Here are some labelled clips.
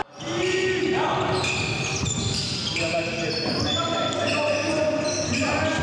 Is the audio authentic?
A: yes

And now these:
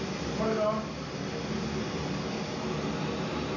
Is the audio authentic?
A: yes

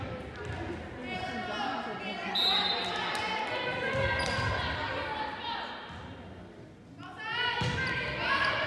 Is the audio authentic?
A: yes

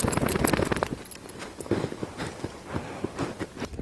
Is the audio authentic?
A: yes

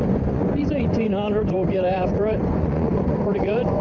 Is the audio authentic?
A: no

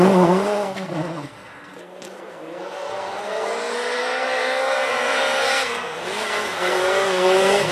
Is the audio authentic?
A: no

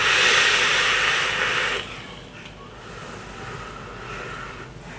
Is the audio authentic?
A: yes